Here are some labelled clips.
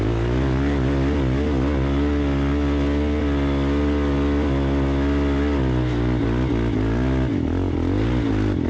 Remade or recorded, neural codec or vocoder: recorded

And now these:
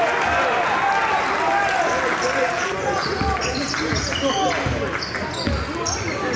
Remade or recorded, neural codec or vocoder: recorded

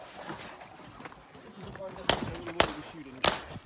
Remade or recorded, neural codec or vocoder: recorded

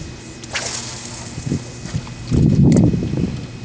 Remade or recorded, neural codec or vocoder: recorded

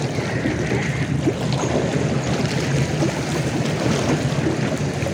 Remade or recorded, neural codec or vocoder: recorded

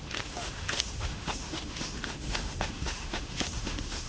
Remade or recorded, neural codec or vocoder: remade, autoencoder, DAC-VAE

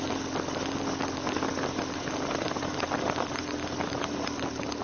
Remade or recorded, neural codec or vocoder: recorded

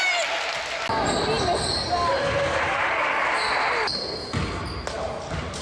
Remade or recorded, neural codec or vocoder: recorded